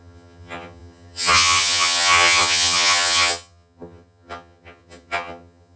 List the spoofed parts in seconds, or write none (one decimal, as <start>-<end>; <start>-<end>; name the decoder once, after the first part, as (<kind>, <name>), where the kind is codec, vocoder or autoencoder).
0.0-5.8 (vocoder, HiFi-GAN)